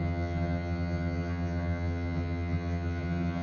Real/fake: fake